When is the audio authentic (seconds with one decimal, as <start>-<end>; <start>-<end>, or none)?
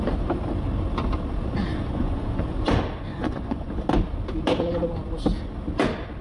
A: 0.0-1.7; 2.4-3.1; 3.7-6.2